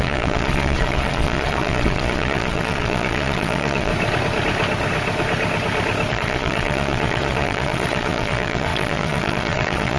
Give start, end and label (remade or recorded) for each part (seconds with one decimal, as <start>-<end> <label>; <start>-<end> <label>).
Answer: 0.0-3.9 remade; 3.9-6.1 recorded; 6.1-10.0 remade